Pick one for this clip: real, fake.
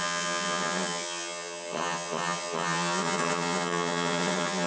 fake